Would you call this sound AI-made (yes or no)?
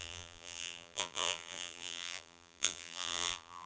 yes